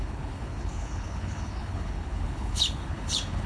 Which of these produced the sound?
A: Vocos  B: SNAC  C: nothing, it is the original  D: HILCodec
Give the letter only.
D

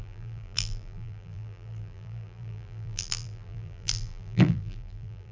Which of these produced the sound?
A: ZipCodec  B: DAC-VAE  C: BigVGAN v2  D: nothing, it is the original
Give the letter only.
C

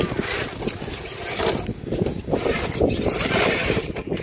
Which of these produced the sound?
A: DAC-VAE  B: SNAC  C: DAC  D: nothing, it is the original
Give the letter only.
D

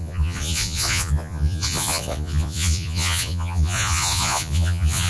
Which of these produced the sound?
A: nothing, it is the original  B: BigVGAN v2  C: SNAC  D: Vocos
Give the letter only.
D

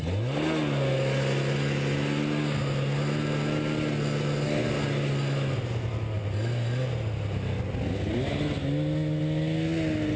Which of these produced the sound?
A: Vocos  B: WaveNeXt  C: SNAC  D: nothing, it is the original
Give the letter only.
D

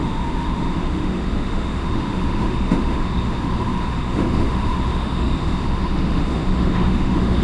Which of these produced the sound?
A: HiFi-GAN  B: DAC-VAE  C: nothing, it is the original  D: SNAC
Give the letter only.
B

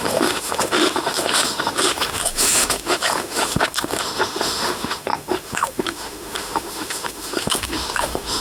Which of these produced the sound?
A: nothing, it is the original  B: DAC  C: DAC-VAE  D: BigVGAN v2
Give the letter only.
C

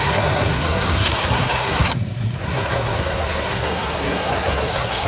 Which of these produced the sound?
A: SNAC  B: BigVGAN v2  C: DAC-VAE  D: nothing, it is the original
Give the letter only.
A